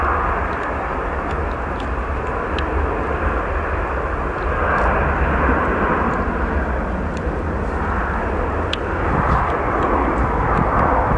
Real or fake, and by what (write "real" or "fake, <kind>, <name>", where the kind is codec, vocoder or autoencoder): real